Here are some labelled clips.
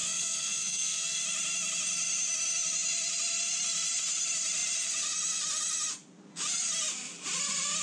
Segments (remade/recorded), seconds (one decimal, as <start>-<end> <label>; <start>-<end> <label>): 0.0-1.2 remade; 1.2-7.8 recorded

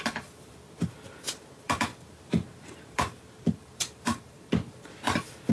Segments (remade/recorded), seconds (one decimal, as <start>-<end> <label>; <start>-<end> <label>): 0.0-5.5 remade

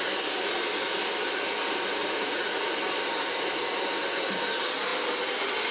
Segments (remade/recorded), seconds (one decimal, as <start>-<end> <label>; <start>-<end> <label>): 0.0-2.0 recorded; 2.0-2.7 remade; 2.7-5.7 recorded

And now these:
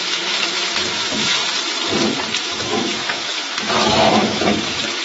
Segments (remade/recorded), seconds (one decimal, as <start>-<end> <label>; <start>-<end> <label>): 0.0-1.4 remade; 1.4-2.4 recorded; 2.4-5.0 remade